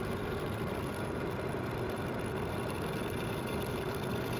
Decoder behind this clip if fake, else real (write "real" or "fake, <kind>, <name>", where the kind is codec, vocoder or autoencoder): real